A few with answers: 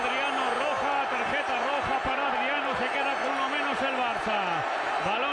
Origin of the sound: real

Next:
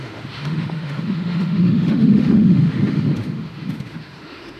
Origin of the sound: fake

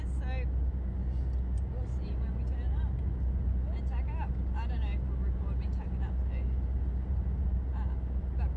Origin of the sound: real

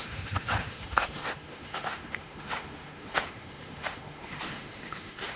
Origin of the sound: fake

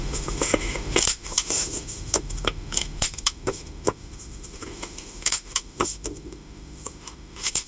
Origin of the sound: fake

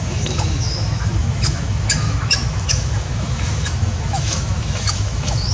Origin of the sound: fake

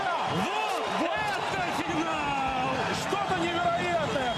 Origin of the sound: real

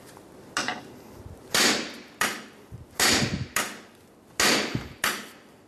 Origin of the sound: real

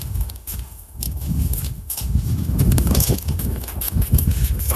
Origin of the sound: fake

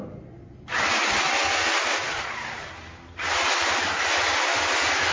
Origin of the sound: real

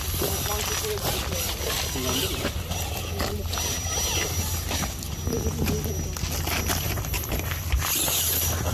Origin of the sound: real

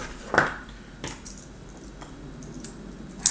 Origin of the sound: real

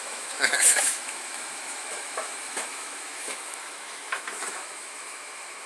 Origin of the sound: fake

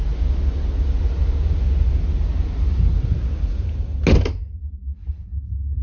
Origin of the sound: real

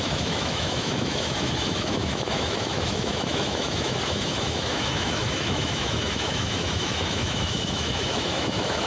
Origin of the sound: fake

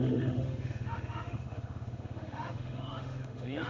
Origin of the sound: fake